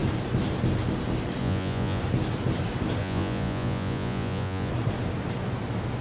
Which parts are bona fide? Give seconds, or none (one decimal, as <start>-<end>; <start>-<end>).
0.0-1.4; 2.0-3.0; 4.7-6.0